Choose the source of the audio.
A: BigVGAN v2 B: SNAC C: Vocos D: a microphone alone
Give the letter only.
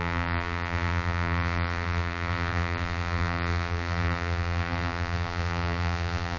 A